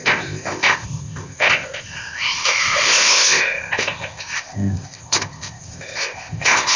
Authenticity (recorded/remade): remade